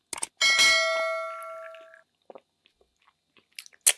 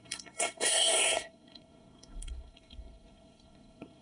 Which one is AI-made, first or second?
second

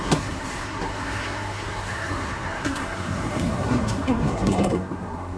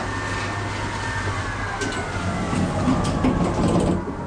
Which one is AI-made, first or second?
first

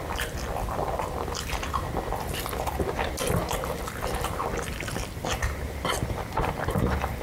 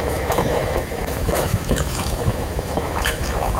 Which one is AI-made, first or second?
second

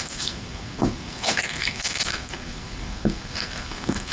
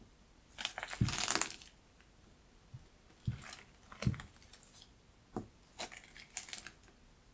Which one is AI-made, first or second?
first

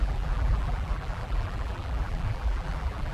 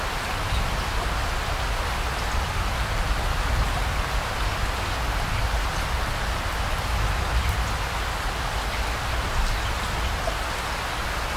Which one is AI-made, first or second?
first